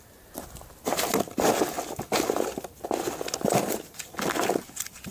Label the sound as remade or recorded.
recorded